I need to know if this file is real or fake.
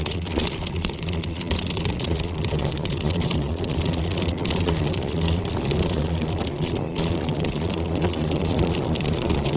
fake